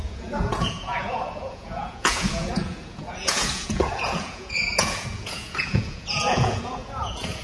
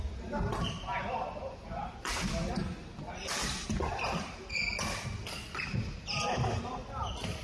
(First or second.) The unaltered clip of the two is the second